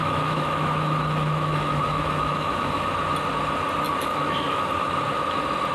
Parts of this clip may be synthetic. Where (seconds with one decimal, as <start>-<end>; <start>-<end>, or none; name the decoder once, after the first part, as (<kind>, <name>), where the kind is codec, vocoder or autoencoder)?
0.0-2.9 (autoencoder, DAC-VAE); 4.1-4.7